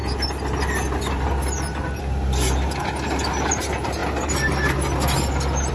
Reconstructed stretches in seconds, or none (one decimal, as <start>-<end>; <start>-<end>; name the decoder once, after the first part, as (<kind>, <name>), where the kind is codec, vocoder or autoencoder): none

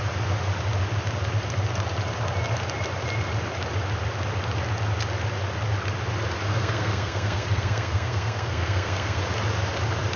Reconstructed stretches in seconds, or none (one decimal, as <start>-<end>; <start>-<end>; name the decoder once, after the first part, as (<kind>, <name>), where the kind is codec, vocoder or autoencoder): 6.5-9.2 (codec, SNAC)

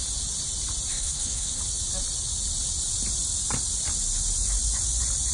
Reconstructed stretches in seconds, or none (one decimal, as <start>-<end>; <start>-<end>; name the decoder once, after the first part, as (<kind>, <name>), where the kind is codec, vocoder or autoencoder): 0.9-1.6 (codec, SNAC)